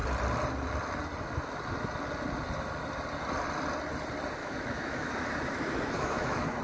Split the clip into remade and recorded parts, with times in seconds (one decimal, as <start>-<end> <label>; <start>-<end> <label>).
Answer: 0.0-4.4 recorded; 4.4-6.6 remade